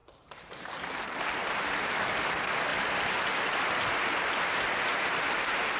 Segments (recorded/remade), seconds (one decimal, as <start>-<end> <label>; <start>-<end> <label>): 0.0-0.7 remade; 0.7-4.9 recorded; 4.9-5.8 remade